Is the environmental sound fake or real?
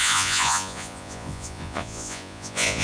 fake